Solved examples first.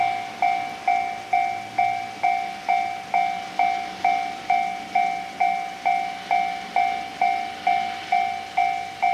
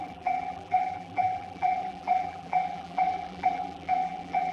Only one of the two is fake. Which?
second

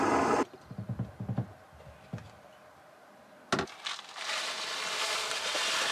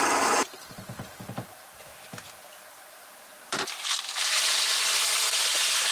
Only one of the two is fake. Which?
second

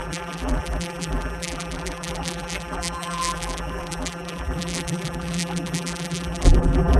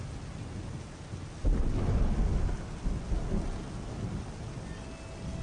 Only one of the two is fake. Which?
first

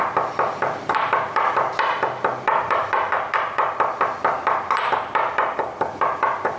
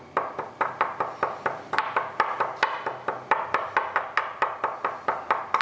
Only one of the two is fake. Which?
first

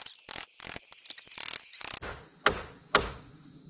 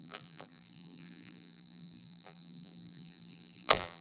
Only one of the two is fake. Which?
second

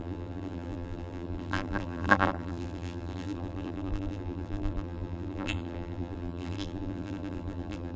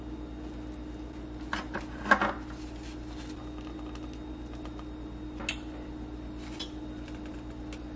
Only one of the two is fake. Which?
first